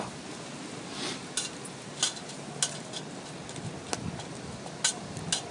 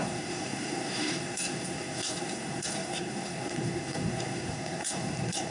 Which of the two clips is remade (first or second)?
second